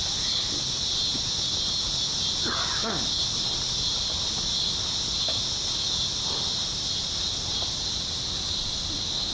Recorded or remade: recorded